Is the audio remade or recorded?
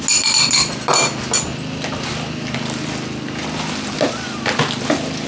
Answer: recorded